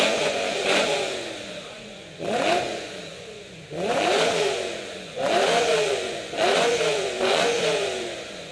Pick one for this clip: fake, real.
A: fake